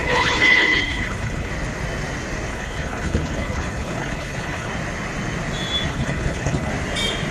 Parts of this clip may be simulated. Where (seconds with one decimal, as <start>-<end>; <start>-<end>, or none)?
0.0-1.5; 2.5-4.7; 5.9-6.7

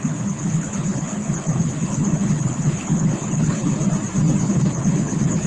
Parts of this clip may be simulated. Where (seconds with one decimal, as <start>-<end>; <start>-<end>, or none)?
0.0-3.8; 4.4-5.5

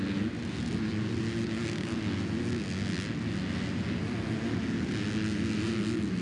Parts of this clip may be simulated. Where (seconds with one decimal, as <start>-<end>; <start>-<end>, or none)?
none

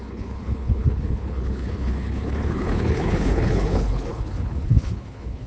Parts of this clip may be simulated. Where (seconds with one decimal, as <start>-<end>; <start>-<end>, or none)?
0.0-5.5

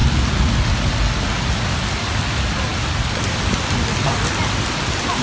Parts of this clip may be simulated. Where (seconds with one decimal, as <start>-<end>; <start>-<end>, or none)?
none